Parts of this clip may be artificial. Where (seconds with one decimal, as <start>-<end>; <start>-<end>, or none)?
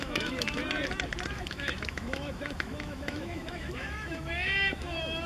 0.0-0.6; 1.3-5.3